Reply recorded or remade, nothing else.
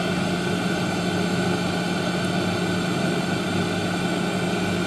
recorded